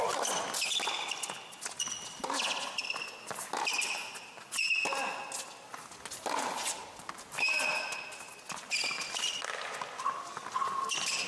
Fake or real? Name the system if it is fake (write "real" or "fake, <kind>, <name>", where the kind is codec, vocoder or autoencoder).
real